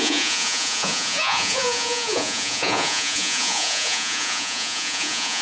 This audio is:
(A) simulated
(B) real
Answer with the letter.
A